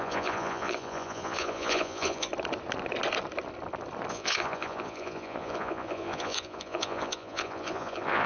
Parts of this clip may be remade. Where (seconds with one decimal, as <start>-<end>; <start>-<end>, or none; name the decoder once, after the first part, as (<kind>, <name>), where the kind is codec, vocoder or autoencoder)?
0.0-2.3 (vocoder, Vocos); 4.1-8.3